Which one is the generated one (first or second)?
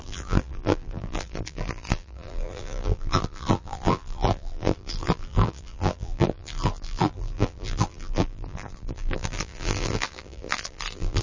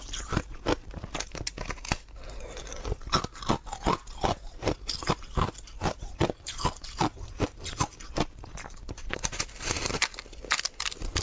first